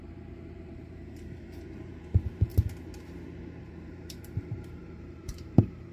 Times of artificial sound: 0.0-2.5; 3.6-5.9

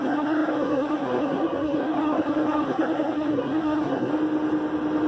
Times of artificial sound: 0.0-4.1

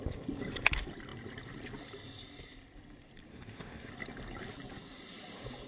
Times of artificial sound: 3.3-3.9

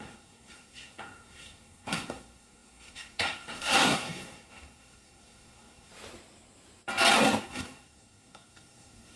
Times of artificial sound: 0.0-5.9; 7.4-9.2

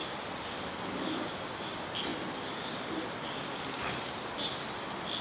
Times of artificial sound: none

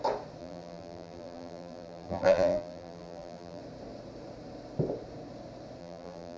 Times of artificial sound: 0.4-3.6; 5.8-6.4

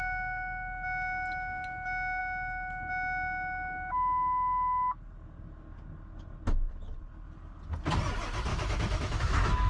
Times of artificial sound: 8.5-9.7

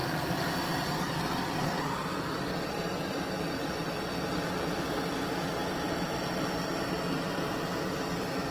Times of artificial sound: none